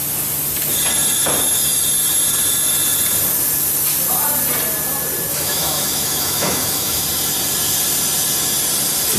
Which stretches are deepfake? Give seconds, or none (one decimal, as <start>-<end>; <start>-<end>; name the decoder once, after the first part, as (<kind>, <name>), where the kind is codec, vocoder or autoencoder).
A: 5.3-7.0 (autoencoder, DAC-VAE)